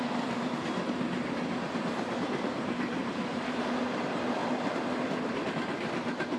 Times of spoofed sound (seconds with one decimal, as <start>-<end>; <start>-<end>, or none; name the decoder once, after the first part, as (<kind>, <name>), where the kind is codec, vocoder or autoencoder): 3.0-3.8 (vocoder, BigVGAN v2); 4.4-5.5